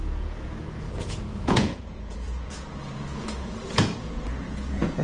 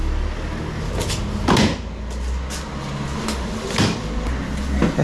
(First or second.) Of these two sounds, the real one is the second